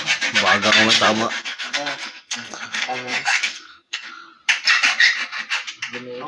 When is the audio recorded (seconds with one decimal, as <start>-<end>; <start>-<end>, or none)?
0.0-1.4; 4.1-6.3